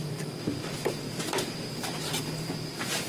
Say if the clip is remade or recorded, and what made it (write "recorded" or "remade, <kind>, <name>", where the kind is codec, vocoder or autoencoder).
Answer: remade, vocoder, BigVGAN v2